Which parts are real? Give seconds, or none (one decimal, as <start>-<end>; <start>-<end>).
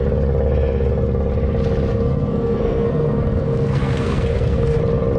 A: 0.0-1.9; 4.8-5.2